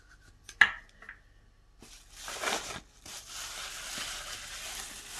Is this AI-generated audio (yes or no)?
no